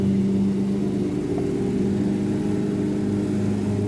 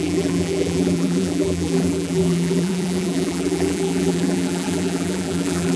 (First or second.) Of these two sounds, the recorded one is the first